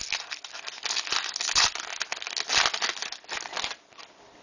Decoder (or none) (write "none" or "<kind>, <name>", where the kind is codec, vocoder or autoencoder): none